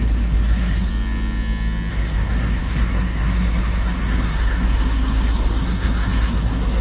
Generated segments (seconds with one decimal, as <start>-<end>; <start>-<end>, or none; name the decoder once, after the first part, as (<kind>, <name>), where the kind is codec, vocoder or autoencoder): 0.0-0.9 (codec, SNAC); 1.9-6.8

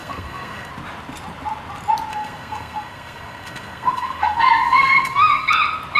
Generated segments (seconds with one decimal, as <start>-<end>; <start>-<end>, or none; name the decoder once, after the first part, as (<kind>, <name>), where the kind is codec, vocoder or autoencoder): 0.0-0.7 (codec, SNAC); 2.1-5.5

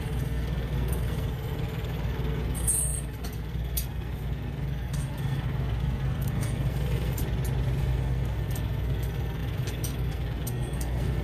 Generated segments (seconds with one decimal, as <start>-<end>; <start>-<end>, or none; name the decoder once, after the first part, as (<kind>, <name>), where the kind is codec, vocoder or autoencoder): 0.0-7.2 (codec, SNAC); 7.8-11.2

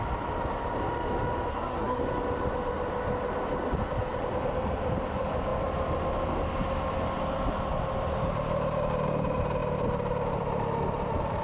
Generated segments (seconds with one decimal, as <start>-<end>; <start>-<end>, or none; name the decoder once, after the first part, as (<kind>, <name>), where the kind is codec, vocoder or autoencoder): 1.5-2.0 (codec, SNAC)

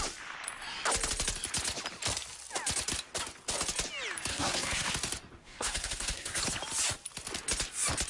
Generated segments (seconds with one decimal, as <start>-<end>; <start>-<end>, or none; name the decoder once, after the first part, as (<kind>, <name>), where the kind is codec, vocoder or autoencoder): 4.3-4.9 (codec, SNAC); 5.4-6.4

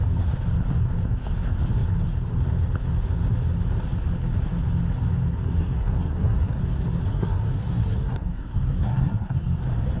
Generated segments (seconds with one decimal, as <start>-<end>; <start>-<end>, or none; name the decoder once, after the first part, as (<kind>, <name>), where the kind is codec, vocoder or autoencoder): 5.6-6.6 (codec, SNAC); 7.1-9.4